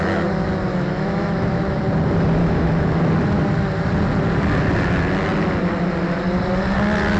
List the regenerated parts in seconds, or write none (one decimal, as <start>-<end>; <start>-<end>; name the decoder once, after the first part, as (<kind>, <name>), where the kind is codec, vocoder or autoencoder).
0.7-1.8 (autoencoder, DAC-VAE); 2.4-3.0